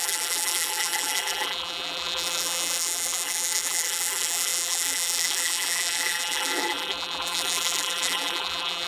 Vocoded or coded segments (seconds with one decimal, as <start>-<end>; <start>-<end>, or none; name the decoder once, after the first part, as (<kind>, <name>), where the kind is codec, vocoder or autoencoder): 0.0-8.9 (vocoder, BigVGAN v2)